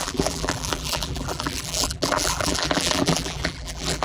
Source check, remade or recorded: remade